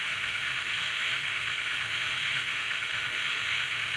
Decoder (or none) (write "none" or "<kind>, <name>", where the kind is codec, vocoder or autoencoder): autoencoder, DAC-VAE